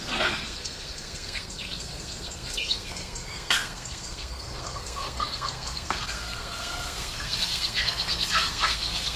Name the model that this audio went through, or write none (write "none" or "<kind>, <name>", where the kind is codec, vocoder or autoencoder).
codec, SNAC